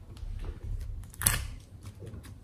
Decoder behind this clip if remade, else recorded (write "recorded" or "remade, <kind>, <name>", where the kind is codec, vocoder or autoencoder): recorded